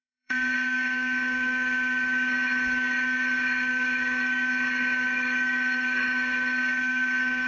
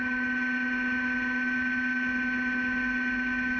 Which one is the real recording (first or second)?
second